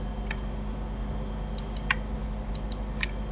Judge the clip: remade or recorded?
recorded